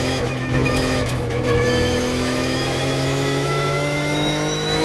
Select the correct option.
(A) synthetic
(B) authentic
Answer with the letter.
A